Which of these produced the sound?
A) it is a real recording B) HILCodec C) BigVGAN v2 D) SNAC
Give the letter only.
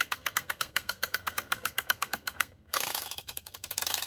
D